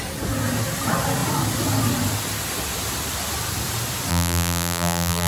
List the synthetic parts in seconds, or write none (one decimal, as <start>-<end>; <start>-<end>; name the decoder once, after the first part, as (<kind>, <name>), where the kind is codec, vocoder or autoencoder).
4.1-5.3 (vocoder, BigVGAN v2)